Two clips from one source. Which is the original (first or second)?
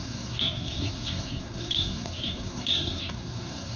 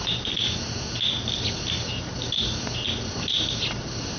second